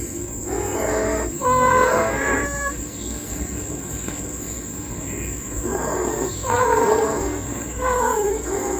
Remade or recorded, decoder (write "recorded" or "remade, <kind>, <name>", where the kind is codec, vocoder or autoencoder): remade, codec, SNAC